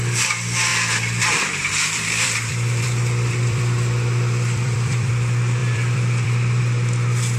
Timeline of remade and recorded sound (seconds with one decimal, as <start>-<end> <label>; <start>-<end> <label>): 0.0-0.7 recorded; 0.7-5.1 remade; 5.1-5.6 recorded; 5.6-6.6 remade; 6.6-7.4 recorded